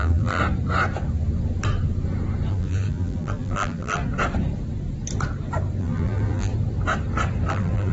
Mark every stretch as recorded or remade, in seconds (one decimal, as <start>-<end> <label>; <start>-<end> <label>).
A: 0.0-0.4 remade; 0.4-2.5 recorded; 2.5-4.0 remade; 4.0-5.8 recorded; 5.8-6.5 remade; 6.5-7.5 recorded; 7.5-7.9 remade